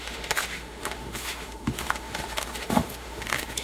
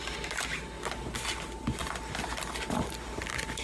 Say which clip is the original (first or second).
second